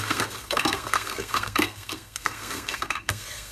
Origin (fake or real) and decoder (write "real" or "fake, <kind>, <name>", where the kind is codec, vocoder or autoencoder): fake, codec, SNAC